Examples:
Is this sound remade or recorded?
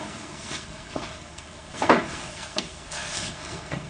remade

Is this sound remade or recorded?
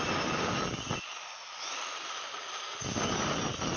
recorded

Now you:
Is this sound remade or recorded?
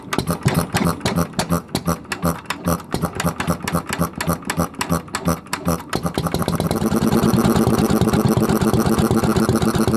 recorded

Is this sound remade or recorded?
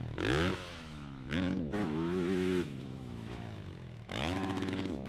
remade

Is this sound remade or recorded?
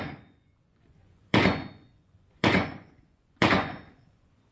remade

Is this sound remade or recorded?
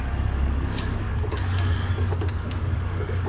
remade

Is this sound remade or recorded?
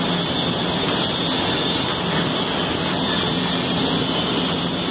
recorded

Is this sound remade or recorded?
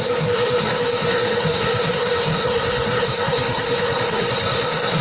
remade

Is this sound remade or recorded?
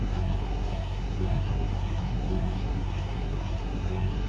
remade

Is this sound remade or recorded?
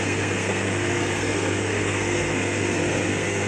remade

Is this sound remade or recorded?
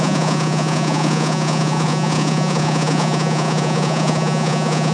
remade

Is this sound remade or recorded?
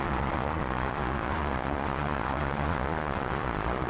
remade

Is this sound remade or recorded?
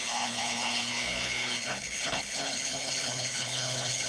remade